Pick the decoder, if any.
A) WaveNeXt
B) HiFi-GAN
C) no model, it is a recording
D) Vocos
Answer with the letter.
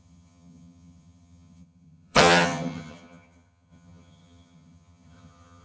B